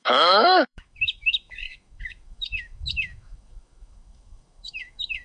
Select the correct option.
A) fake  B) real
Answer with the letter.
A